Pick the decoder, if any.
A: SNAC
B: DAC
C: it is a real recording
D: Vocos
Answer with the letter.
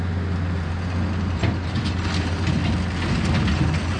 C